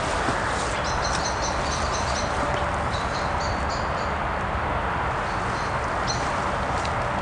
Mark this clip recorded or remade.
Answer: recorded